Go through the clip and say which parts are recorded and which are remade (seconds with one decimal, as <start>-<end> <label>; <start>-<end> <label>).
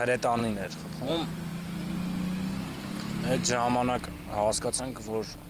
0.0-0.4 recorded; 0.4-1.1 remade; 1.1-5.5 recorded